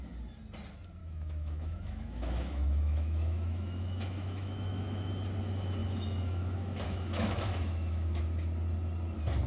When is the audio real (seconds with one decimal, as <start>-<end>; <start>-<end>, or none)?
0.0-1.0; 5.1-5.8; 8.2-9.5